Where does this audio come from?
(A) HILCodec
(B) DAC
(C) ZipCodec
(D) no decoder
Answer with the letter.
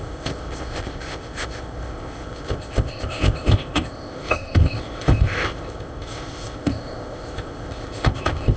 C